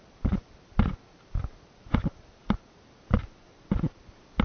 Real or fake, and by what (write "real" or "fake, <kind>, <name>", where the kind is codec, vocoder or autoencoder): real